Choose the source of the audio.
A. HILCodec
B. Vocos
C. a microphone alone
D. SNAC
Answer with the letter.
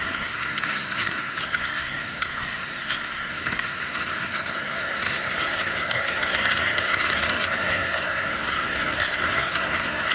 D